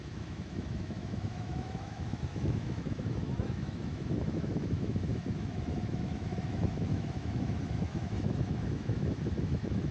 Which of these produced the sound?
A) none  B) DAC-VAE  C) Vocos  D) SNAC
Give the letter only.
B